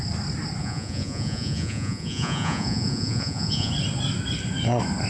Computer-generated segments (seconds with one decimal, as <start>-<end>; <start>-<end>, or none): 0.6-3.7